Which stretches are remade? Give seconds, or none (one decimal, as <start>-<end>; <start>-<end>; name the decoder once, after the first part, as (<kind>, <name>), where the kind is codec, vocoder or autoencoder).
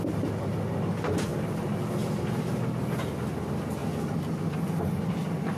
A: none